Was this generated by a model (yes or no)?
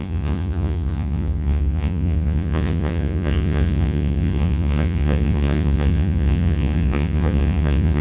yes